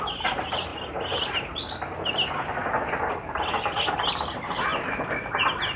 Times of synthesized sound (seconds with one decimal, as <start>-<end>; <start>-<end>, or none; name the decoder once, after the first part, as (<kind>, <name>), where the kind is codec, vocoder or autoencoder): none